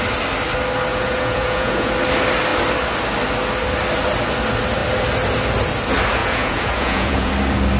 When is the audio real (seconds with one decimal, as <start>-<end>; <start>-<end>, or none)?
0.0-0.9; 1.9-6.2; 7.3-7.8